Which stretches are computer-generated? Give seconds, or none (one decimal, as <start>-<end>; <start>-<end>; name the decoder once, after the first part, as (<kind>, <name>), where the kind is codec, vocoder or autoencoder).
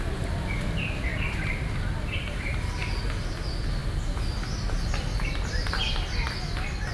none